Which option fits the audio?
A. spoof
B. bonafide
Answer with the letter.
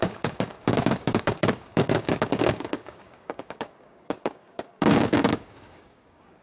A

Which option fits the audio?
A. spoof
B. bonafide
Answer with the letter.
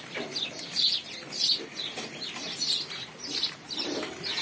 B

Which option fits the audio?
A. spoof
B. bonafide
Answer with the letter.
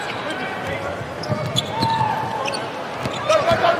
B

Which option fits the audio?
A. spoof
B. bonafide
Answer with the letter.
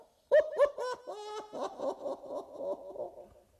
B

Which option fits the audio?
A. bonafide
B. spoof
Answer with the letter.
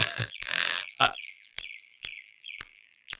B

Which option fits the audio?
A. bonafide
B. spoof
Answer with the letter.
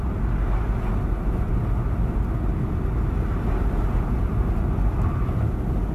A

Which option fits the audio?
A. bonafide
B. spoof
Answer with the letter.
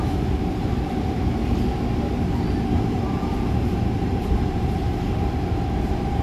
B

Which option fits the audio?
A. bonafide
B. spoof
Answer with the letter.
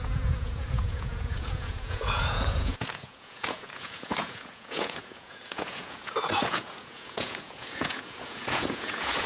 B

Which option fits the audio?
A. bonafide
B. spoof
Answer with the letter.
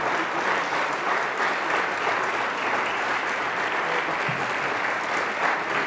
A